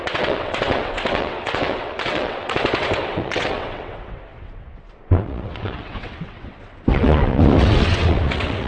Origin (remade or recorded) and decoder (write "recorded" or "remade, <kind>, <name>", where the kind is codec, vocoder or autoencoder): remade, vocoder, WaveNeXt